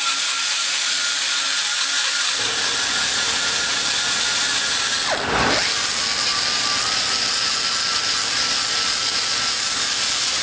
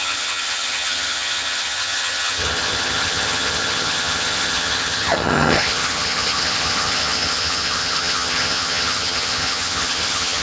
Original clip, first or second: first